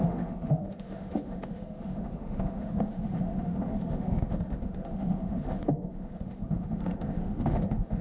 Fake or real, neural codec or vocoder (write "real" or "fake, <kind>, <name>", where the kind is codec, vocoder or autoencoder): fake, autoencoder, DAC-VAE